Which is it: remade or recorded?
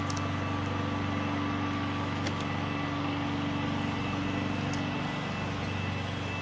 recorded